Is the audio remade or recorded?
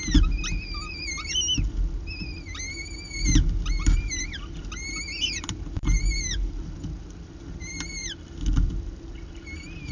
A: recorded